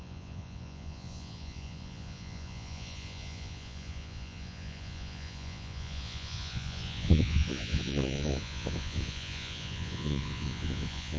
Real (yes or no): no